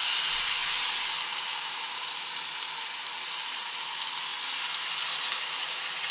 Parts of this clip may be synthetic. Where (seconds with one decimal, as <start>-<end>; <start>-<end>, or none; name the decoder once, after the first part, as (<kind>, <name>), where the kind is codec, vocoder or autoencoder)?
none